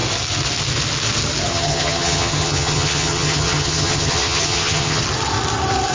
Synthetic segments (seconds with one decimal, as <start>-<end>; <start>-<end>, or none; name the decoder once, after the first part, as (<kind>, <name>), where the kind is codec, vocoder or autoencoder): 1.5-5.0 (vocoder, HiFi-GAN)